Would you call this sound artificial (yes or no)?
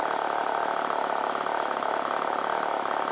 no